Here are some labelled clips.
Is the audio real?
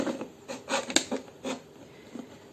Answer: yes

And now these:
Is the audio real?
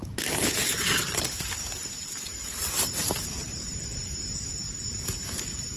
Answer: no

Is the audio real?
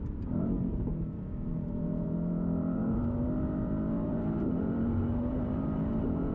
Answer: no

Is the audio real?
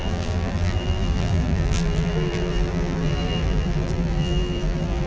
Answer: no